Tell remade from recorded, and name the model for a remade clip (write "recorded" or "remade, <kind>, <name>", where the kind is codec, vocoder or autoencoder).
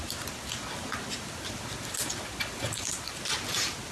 recorded